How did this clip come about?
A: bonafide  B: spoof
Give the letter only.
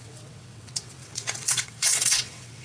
B